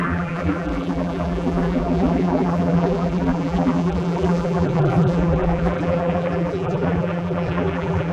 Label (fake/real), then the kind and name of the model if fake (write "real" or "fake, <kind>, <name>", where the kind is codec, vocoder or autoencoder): fake, vocoder, BigVGAN v2